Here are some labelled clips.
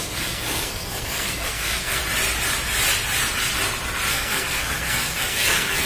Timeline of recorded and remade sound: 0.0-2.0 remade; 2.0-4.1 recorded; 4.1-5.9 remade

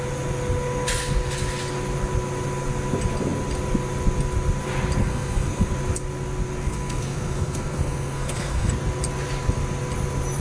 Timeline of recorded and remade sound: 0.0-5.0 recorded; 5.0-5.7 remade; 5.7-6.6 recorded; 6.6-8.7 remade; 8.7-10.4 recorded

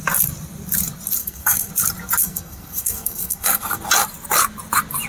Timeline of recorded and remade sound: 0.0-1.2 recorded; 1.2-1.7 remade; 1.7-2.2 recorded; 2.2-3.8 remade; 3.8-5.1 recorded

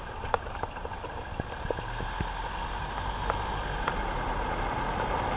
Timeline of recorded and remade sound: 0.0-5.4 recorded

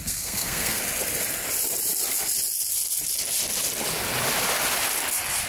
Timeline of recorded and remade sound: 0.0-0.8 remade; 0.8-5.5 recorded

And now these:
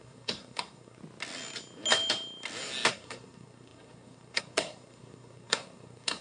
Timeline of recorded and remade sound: 0.0-1.0 remade; 1.0-2.9 recorded; 2.9-6.2 remade

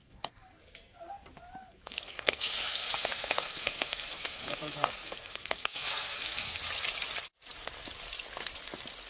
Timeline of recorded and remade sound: 0.0-1.0 remade; 1.0-1.6 recorded; 1.6-6.6 remade; 6.6-9.1 recorded

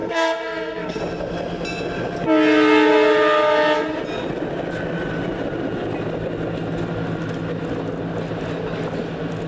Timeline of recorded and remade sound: 0.0-1.0 remade; 1.0-9.5 recorded